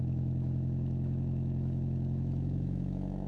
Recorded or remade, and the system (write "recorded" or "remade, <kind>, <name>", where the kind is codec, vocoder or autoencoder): remade, autoencoder, DAC-VAE